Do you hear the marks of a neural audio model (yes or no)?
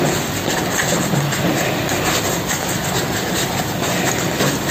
no